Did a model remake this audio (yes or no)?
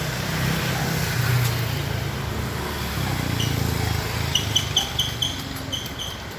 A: no